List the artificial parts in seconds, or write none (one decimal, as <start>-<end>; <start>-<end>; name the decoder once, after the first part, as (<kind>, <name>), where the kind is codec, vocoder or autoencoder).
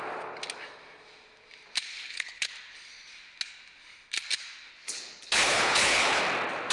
1.9-2.5 (codec, HILCodec); 4.7-6.2